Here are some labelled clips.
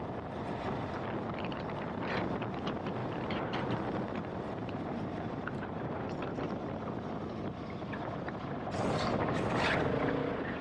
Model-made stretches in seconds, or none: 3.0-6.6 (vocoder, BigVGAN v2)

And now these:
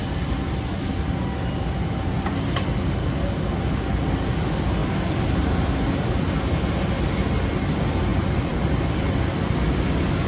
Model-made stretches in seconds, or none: 0.0-0.8 (vocoder, BigVGAN v2); 8.1-8.9

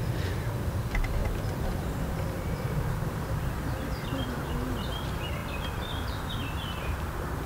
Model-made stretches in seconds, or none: 1.2-4.5 (vocoder, BigVGAN v2); 5.4-7.0

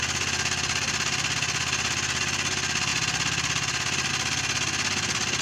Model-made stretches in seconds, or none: none

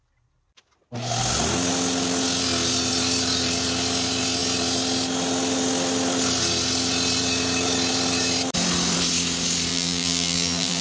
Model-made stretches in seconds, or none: 9.7-10.8 (vocoder, BigVGAN v2)